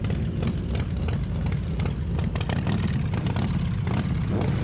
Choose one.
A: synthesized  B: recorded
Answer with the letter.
B